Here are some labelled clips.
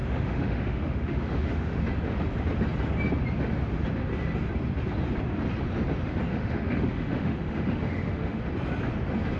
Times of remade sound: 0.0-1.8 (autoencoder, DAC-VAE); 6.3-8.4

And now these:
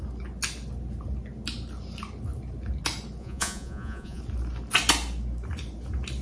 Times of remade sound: 3.2-4.2 (vocoder, Vocos)

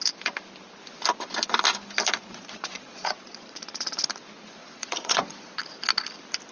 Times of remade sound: 2.3-4.0 (vocoder, Vocos); 4.6-5.6

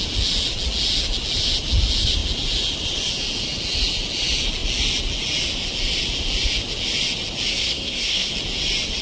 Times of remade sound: 7.5-8.3 (codec, SNAC)

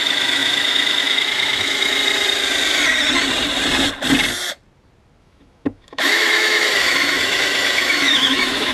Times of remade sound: 0.0-2.0 (autoencoder, DAC-VAE); 5.2-8.7

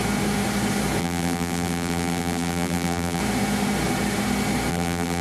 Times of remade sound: 1.0-3.2 (vocoder, BigVGAN v2); 4.7-5.2

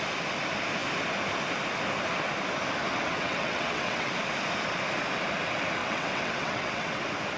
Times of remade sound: 2.9-4.1 (vocoder, WaveNeXt); 5.8-7.0